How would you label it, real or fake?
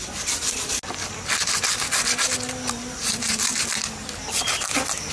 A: real